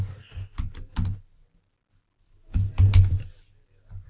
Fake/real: real